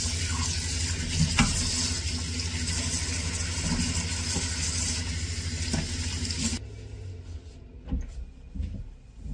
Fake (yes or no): no